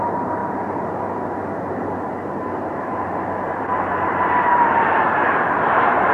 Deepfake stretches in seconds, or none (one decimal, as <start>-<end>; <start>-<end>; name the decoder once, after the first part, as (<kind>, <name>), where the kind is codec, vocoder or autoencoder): 0.0-0.4 (vocoder, BigVGAN v2); 2.7-6.1

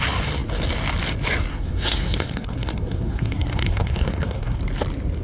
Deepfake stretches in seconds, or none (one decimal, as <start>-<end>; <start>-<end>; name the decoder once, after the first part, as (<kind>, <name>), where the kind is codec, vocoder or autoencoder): 1.5-4.6 (codec, SNAC)

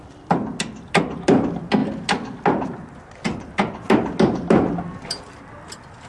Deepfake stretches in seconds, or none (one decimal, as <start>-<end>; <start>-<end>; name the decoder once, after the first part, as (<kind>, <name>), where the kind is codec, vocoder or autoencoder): none

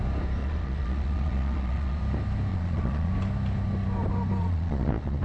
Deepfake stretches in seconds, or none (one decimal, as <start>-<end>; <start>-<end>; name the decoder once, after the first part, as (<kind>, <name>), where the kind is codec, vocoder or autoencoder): 0.4-2.0 (vocoder, Vocos); 2.5-3.1; 4.4-5.2

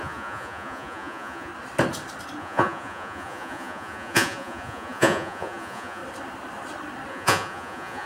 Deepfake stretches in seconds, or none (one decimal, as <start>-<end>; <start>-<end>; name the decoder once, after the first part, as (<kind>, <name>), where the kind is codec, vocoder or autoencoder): 0.0-1.5 (vocoder, Vocos); 2.4-6.0; 7.1-8.1

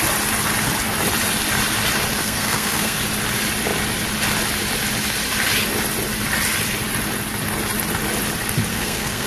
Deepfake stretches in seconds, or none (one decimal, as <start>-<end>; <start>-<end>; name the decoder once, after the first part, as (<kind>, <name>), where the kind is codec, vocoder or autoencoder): 2.2-3.0 (codec, SNAC); 8.7-9.3

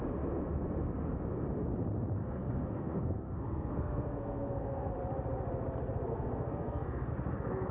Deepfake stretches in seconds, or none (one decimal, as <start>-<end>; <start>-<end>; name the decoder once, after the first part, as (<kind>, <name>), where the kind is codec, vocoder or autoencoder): 2.2-4.9 (codec, SNAC); 6.1-7.1

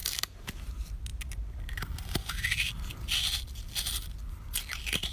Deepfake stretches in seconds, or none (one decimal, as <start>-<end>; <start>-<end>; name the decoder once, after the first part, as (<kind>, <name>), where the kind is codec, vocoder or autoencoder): 0.0-0.7 (vocoder, BigVGAN v2)